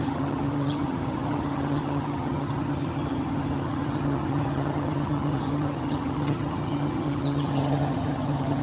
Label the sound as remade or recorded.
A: remade